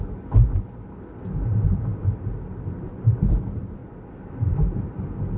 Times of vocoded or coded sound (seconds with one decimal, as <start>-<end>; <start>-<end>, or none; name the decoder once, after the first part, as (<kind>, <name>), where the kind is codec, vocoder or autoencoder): none